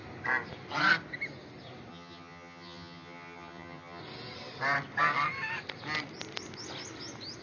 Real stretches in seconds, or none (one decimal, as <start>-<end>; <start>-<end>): 0.0-1.9; 4.0-7.4